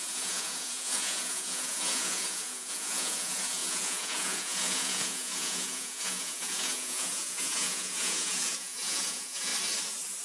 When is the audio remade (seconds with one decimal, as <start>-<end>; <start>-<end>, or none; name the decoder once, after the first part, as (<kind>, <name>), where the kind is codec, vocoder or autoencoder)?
0.0-9.5 (vocoder, Vocos)